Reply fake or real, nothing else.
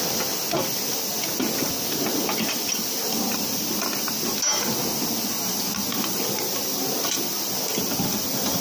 real